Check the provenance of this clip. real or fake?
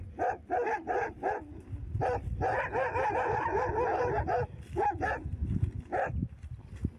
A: real